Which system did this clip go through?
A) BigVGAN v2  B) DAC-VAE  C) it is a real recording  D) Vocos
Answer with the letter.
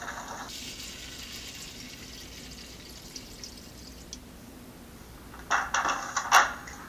C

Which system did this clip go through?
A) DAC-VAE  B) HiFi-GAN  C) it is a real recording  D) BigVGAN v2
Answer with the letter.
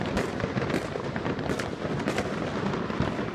C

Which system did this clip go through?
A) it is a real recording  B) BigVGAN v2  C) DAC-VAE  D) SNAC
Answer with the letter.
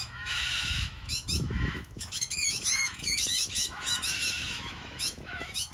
C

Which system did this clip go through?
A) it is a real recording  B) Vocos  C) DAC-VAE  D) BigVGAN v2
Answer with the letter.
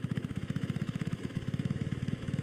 C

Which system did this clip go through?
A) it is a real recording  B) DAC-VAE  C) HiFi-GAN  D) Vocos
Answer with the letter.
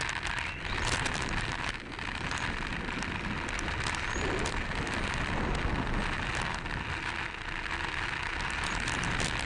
A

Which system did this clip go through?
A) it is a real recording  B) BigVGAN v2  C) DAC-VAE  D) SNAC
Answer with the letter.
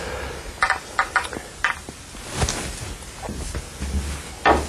A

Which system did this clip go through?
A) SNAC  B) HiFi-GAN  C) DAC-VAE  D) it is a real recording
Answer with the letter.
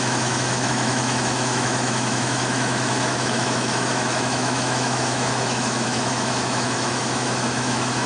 C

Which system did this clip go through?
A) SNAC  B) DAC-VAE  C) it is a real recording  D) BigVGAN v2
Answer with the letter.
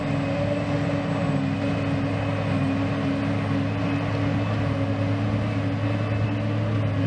C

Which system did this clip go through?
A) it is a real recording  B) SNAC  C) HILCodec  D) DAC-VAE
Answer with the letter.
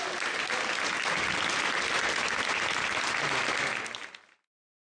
A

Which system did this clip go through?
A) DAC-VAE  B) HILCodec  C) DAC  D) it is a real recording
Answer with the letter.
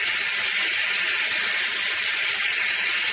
D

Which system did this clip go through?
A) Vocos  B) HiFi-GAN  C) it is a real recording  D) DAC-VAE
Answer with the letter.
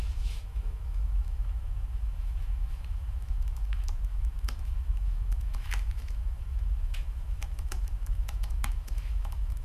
D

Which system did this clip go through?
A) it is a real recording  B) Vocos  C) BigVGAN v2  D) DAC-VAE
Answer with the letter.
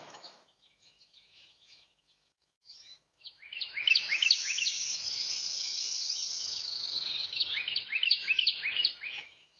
D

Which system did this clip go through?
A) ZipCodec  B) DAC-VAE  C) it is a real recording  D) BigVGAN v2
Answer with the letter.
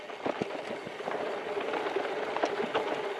C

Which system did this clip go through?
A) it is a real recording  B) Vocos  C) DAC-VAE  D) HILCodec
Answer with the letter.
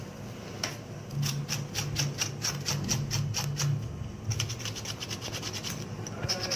A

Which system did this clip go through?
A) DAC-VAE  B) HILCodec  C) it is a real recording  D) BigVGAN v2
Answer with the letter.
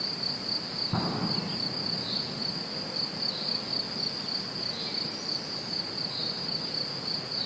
C